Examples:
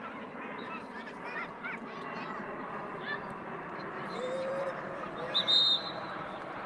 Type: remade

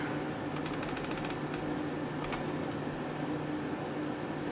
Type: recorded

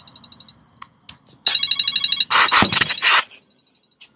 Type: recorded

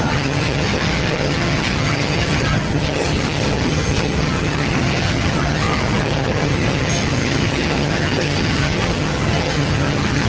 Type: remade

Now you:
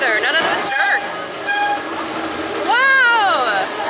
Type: recorded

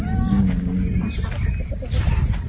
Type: recorded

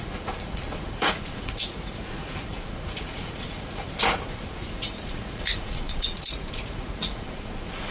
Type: remade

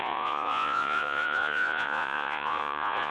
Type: remade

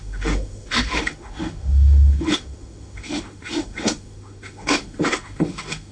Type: remade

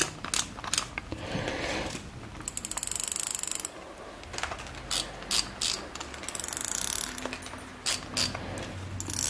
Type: recorded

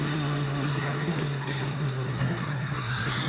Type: remade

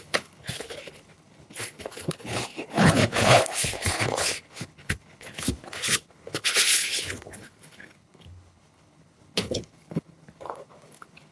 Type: remade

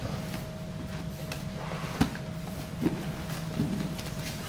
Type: recorded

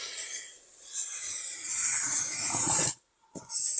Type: remade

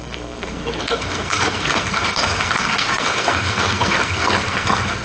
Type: remade